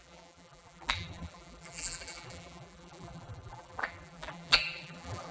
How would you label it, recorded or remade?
remade